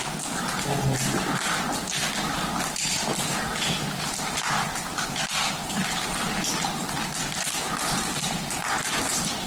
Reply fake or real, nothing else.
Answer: real